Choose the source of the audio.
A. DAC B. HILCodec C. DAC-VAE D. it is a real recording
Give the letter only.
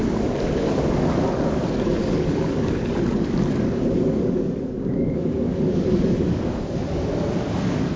A